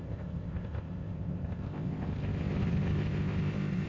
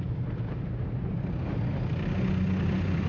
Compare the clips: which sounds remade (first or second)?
first